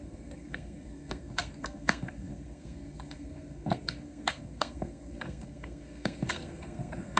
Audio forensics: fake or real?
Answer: fake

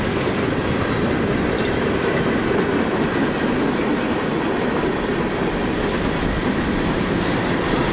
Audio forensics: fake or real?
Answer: real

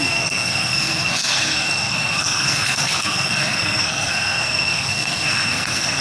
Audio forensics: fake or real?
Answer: fake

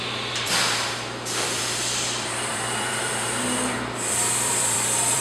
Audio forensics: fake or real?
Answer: fake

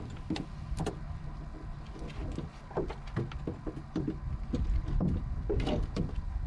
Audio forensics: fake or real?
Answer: real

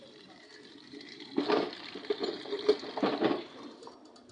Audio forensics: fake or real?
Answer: fake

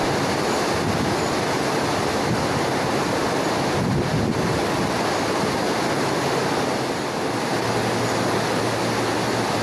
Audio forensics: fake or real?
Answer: real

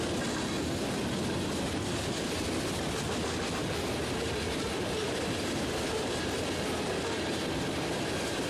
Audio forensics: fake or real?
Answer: real